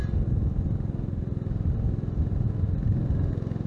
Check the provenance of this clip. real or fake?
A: real